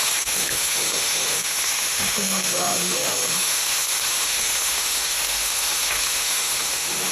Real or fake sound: fake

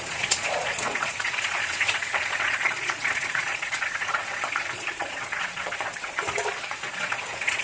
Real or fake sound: fake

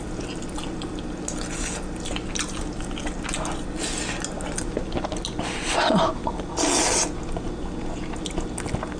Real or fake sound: real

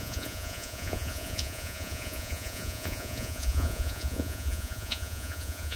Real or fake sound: fake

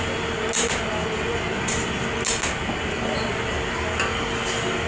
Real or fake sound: real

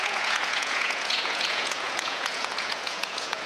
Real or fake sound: fake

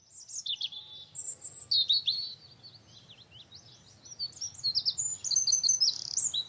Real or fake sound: real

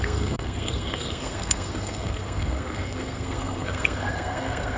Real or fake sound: fake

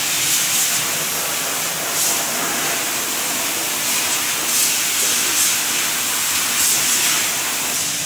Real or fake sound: real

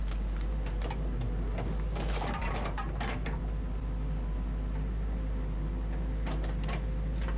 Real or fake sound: real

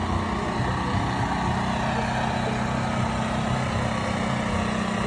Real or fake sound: real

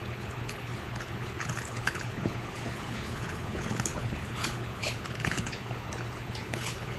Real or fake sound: fake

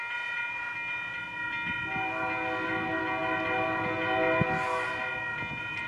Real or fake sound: real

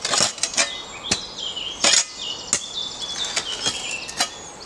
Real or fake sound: real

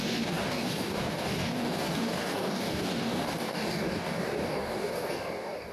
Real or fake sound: fake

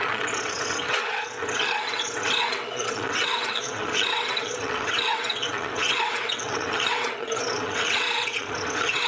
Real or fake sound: fake